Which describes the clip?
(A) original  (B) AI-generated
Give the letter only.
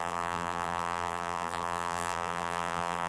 B